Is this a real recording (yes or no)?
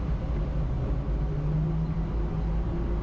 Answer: yes